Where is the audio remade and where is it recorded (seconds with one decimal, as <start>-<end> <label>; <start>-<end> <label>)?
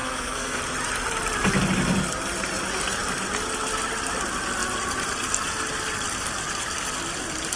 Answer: 0.0-0.6 remade; 0.6-7.6 recorded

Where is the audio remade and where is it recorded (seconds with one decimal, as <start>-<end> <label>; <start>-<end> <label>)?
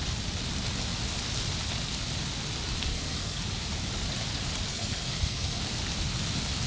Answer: 0.0-2.9 recorded; 2.9-3.4 remade; 3.4-4.7 recorded; 4.7-5.6 remade; 5.6-6.7 recorded